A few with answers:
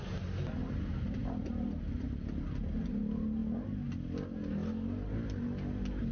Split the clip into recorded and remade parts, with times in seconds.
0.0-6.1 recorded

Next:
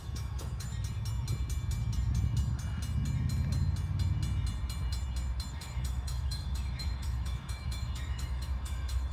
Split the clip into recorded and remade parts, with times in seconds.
0.0-0.7 remade; 0.7-5.5 recorded; 5.5-9.1 remade

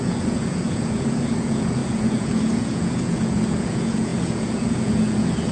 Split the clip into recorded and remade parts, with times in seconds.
0.0-5.5 remade